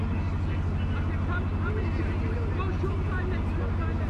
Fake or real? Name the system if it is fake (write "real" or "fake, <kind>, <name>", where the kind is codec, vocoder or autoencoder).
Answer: real